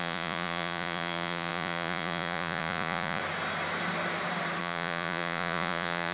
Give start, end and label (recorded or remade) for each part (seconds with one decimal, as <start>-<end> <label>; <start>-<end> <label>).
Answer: 0.0-3.2 remade; 3.2-4.6 recorded; 4.6-6.1 remade